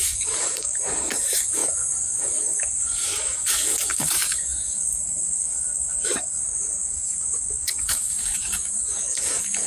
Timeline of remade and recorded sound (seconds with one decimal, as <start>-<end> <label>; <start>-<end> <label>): 0.0-9.7 remade